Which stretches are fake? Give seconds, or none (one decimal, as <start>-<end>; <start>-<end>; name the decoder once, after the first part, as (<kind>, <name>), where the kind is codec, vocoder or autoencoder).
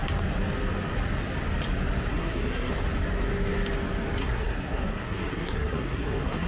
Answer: 2.1-2.7 (codec, SNAC); 4.2-6.5